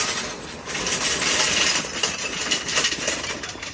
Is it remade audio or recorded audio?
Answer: remade